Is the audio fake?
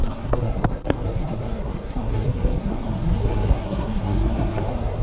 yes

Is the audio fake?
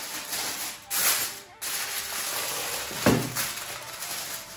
no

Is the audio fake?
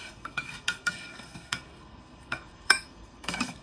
yes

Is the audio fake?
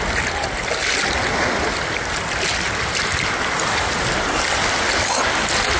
no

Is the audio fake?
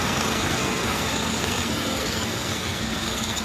yes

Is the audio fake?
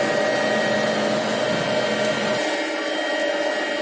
no